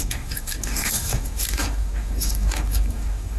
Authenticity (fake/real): fake